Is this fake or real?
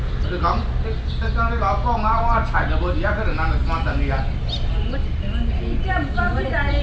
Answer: real